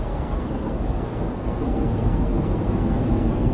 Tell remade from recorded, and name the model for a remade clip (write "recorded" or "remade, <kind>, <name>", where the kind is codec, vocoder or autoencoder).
remade, codec, SNAC